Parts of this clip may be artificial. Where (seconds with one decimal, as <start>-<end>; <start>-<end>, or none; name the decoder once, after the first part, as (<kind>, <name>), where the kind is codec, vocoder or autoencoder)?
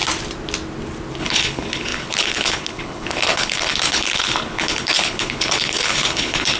1.2-6.6 (codec, HILCodec)